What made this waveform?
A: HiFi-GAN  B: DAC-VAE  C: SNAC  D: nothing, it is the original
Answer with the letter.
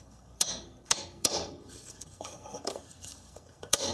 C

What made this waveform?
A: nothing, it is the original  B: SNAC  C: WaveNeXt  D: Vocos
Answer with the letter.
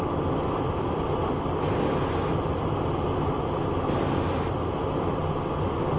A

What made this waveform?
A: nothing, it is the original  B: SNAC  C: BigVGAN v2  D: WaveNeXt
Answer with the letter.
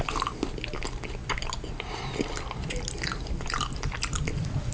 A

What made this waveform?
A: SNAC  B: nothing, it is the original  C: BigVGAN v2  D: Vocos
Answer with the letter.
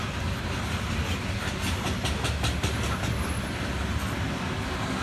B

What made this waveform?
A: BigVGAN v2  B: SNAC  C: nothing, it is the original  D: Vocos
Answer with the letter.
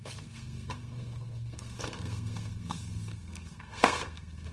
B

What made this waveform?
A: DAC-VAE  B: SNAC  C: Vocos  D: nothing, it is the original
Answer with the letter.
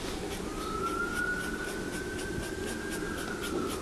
D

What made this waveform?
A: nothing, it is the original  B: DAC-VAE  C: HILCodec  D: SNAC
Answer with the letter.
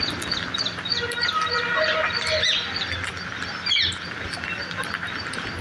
A